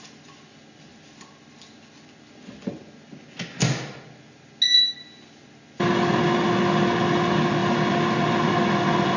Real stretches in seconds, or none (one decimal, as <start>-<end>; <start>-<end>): 0.0-9.2